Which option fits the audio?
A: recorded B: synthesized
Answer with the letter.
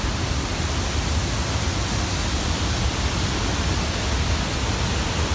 A